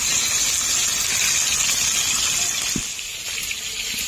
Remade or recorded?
recorded